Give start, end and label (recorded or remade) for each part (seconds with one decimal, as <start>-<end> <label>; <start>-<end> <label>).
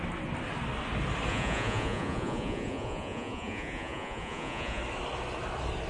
0.0-1.3 recorded; 1.3-4.8 remade; 4.8-5.9 recorded